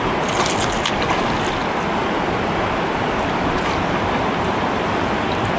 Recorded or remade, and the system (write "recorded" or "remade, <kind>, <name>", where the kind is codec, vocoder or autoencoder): recorded